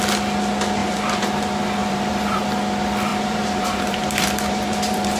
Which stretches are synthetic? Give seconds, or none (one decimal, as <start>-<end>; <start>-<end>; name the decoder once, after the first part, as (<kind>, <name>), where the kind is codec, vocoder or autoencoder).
0.8-1.4 (vocoder, BigVGAN v2); 1.8-2.4; 3.1-5.2